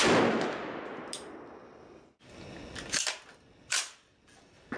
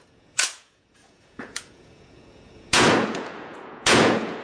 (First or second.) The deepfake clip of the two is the second